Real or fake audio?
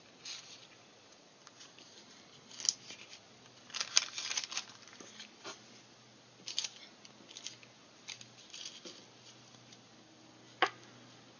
real